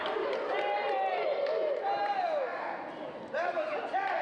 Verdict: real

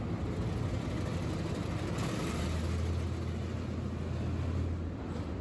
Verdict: real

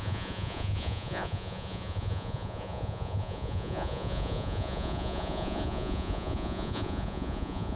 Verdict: fake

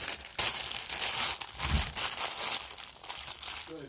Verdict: real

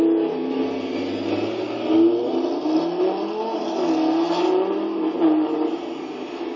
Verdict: real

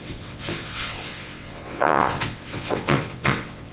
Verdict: fake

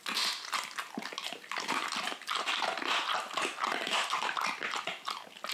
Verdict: real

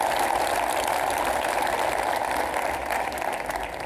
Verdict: real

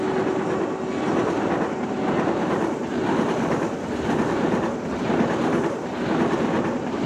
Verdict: real